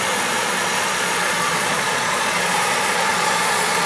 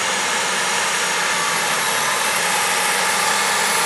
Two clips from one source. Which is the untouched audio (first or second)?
second